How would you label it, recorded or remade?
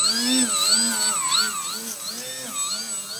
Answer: recorded